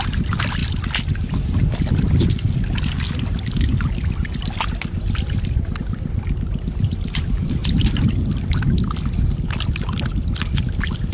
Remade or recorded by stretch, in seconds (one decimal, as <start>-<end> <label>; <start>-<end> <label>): 0.0-0.6 remade; 0.6-5.8 recorded; 5.8-7.6 remade; 7.6-10.4 recorded; 10.4-11.1 remade